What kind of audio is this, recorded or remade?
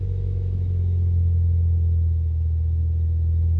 remade